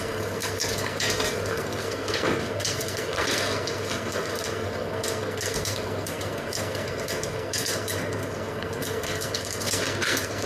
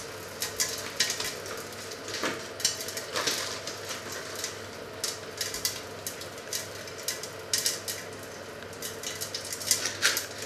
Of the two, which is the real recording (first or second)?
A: second